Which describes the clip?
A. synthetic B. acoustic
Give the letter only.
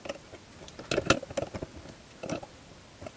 B